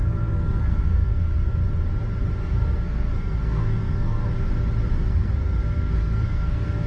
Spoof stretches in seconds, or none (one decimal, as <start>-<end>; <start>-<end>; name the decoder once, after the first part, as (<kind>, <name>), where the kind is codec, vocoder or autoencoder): 0.0-1.6 (codec, SNAC); 2.4-4.2; 4.9-6.9